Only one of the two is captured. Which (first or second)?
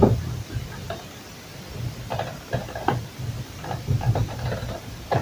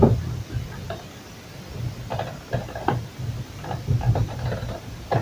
second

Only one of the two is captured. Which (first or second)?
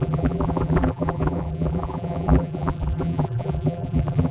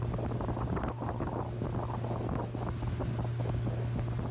second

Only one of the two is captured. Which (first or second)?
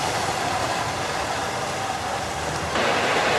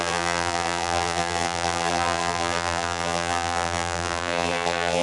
first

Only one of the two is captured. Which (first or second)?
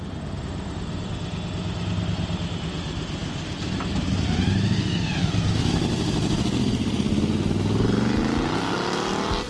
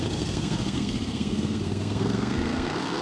first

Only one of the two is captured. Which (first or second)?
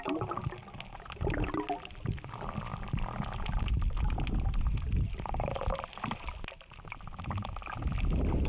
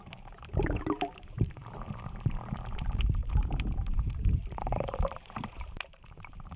first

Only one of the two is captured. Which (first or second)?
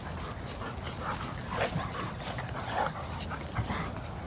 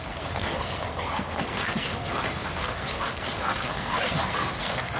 first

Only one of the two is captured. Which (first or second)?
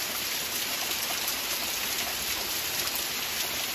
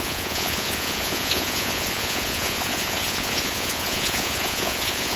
first